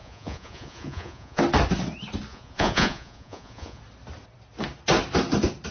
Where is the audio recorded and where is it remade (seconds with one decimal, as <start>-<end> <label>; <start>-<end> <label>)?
0.0-1.4 remade; 1.4-2.3 recorded; 2.3-3.8 remade; 3.8-5.7 recorded